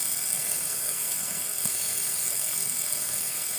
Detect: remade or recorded remade